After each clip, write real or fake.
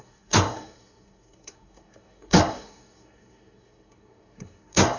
fake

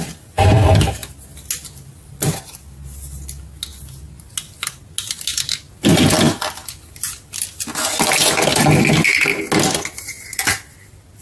real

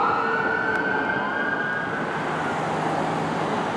real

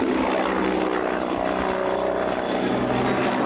real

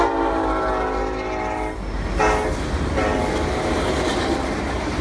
real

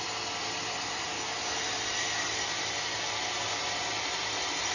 real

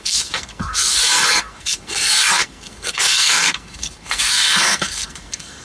fake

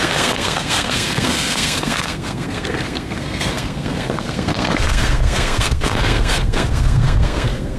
fake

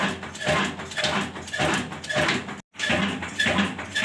real